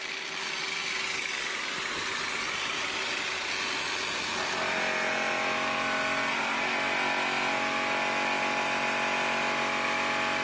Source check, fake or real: real